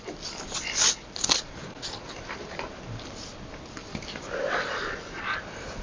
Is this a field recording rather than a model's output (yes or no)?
yes